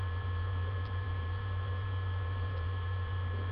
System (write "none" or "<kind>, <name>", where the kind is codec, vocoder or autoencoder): vocoder, BigVGAN v2